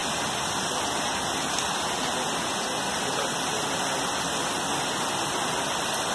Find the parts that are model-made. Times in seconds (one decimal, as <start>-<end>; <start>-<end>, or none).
none